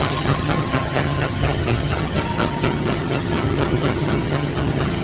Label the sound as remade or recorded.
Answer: remade